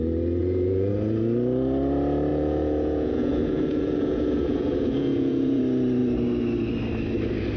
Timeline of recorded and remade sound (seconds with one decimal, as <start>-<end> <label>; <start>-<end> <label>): 0.0-0.4 recorded; 0.4-0.9 remade; 0.9-2.3 recorded; 2.3-5.6 remade; 5.6-7.6 recorded